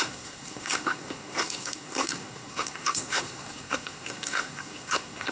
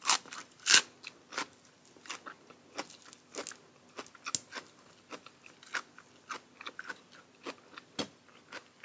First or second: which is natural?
second